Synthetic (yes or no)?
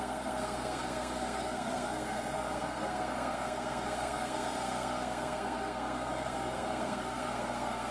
yes